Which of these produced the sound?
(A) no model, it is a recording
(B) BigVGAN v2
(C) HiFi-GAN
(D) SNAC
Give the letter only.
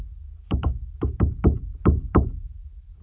B